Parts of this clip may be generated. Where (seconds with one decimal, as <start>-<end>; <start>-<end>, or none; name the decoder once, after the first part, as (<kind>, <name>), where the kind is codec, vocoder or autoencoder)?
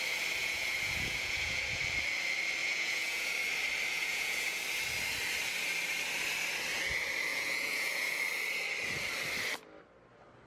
0.4-1.6 (vocoder, Vocos); 2.6-3.3; 3.9-4.6; 7.3-8.2